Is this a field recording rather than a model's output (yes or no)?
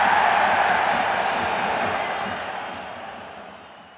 yes